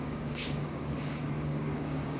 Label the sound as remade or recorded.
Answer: remade